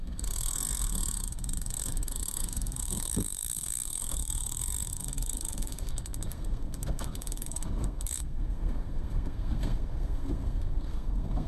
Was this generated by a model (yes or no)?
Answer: yes